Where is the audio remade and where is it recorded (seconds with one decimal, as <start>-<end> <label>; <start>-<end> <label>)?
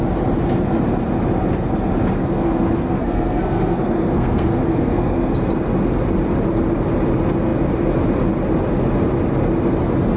0.0-2.2 recorded; 2.2-5.3 remade; 5.3-10.2 recorded